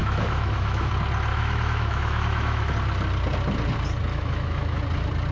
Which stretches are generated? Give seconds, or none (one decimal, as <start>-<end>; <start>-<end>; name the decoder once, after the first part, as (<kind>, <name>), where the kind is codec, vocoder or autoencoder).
0.0-0.9 (autoencoder, DAC-VAE); 1.3-2.7; 4.1-4.8